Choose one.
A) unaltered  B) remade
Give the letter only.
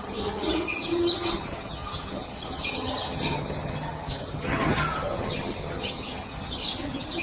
B